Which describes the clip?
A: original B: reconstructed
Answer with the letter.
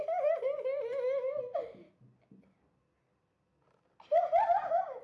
A